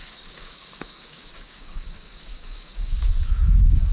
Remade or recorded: remade